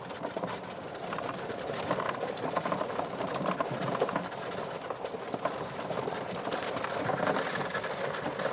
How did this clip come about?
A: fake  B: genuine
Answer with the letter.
A